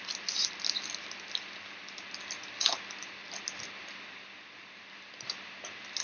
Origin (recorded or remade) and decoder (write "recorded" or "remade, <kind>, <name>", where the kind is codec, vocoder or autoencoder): recorded